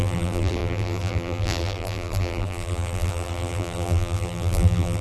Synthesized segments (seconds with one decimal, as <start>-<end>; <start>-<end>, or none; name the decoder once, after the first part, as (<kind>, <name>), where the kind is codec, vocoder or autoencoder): 0.0-5.0 (vocoder, BigVGAN v2)